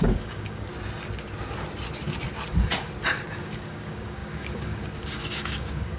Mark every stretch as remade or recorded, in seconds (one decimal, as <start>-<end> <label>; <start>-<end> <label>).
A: 0.0-0.7 remade; 0.7-3.4 recorded; 3.4-6.0 remade